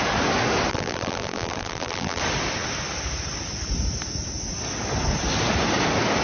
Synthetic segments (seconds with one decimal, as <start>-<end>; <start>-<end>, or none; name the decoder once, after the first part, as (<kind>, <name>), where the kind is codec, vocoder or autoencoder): 0.7-2.2 (vocoder, BigVGAN v2)